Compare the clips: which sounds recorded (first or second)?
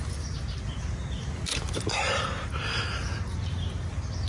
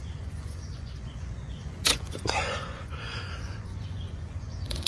first